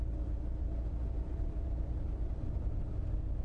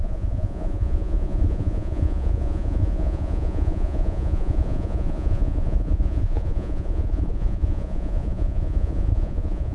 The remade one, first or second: second